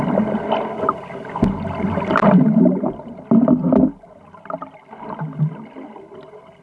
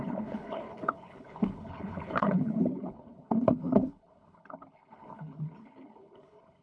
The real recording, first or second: first